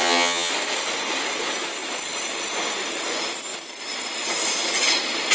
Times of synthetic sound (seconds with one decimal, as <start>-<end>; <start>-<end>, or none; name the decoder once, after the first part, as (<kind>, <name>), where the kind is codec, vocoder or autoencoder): 0.0-0.5 (vocoder, HiFi-GAN)